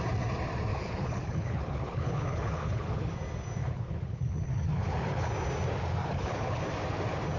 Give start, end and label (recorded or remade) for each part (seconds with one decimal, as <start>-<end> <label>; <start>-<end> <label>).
0.0-0.7 recorded; 0.7-3.1 remade; 3.1-3.6 recorded; 3.6-5.3 remade; 5.3-6.0 recorded; 6.0-6.6 remade; 6.6-7.4 recorded